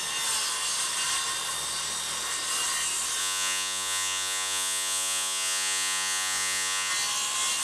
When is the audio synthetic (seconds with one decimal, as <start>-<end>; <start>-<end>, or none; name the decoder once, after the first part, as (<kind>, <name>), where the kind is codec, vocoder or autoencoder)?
3.2-6.9 (vocoder, Vocos)